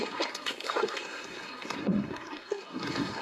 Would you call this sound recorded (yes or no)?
no